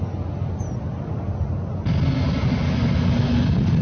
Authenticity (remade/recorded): recorded